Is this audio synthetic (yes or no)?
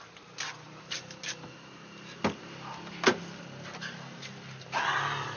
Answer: no